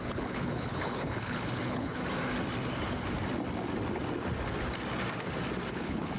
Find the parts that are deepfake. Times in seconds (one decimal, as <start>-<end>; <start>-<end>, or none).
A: 0.0-2.0; 5.7-6.2